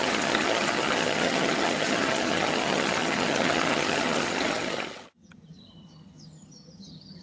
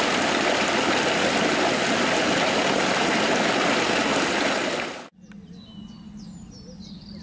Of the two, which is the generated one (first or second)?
first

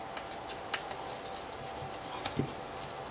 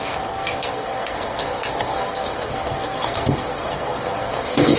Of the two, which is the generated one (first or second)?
second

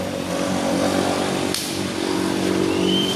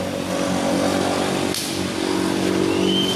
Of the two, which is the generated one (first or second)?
first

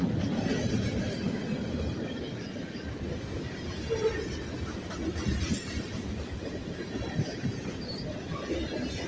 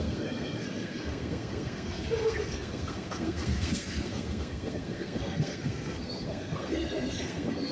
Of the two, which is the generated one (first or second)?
second